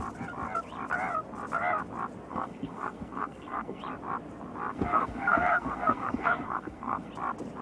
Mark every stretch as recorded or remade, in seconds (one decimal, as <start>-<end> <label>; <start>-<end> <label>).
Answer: 0.0-2.3 recorded; 2.3-3.8 remade; 3.8-4.7 recorded; 4.7-7.1 remade; 7.1-7.6 recorded

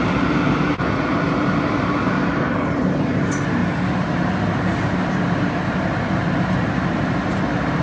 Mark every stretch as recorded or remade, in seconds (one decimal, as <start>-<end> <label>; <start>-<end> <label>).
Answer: 0.0-3.6 remade; 3.6-6.7 recorded; 6.7-7.8 remade

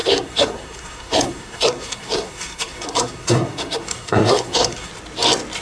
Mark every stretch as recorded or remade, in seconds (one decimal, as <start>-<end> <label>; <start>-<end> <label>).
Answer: 0.0-4.9 remade; 4.9-5.6 recorded

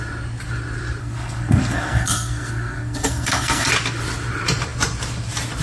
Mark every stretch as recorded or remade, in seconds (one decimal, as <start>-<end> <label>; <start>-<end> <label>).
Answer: 0.0-1.0 recorded; 1.0-3.7 remade; 3.7-5.6 recorded